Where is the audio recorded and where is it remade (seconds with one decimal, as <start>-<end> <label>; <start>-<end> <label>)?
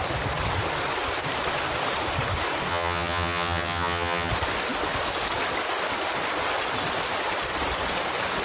0.0-2.7 recorded; 2.7-4.3 remade; 4.3-8.4 recorded